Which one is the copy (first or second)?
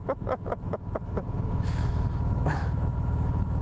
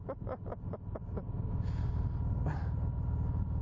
first